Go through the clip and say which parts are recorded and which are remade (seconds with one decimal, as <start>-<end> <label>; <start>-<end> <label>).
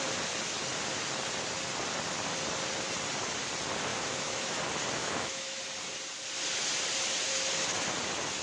0.0-3.9 recorded; 3.9-4.6 remade; 4.6-5.0 recorded; 5.0-5.6 remade; 5.6-8.4 recorded